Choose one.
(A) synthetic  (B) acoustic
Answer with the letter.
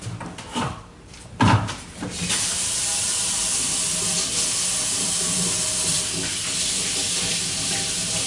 A